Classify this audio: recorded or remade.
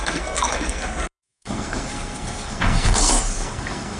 remade